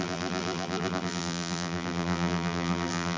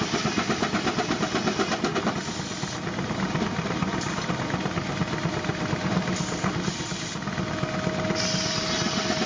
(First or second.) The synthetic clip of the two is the first